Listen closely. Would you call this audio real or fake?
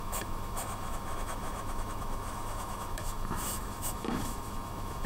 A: fake